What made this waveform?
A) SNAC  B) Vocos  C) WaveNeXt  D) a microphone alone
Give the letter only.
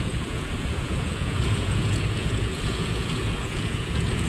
B